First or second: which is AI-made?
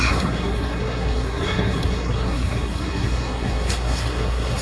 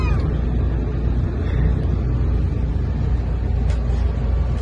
first